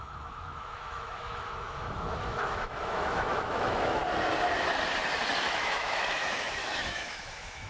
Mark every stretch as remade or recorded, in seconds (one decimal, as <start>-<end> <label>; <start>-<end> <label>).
0.0-4.0 remade; 4.0-5.4 recorded; 5.4-7.7 remade